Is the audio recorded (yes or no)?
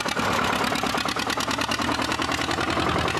yes